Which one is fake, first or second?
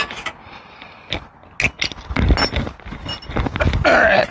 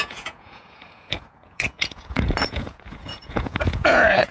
second